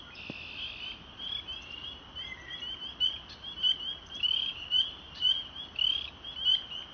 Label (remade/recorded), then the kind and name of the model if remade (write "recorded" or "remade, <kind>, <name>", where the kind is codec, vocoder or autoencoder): recorded